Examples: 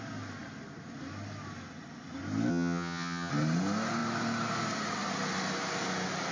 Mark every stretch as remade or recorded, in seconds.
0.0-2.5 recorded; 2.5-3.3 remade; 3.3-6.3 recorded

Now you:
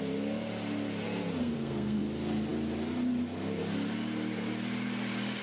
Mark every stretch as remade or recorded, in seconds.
0.0-1.4 recorded; 1.4-2.0 remade; 2.0-5.4 recorded

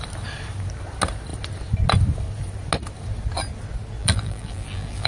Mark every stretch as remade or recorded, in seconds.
0.0-4.0 recorded; 4.0-5.1 remade

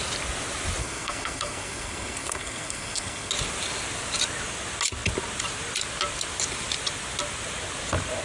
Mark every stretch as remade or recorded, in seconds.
0.0-0.8 recorded; 0.8-3.3 remade; 3.3-8.2 recorded

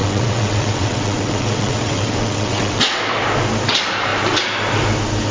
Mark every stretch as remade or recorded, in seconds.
0.0-3.0 remade; 3.0-5.3 recorded

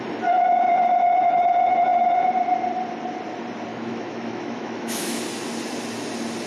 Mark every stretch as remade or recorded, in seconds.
0.0-3.7 recorded; 3.7-5.2 remade; 5.2-6.5 recorded

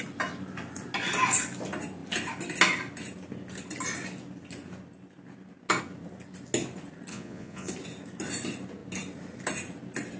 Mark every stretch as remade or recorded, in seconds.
0.0-7.1 recorded; 7.1-7.7 remade; 7.7-10.2 recorded

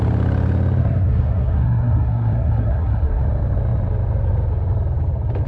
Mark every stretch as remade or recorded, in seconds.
0.0-0.8 recorded; 0.8-3.2 remade; 3.2-5.5 recorded